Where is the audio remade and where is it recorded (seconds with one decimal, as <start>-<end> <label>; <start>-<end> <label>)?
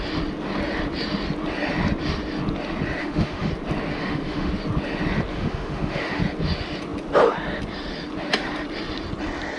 0.0-3.0 recorded; 3.0-3.5 remade; 3.5-3.9 recorded; 3.9-4.5 remade; 4.5-5.3 recorded; 5.3-6.2 remade; 6.2-9.6 recorded